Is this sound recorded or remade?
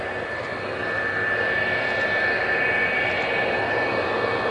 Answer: recorded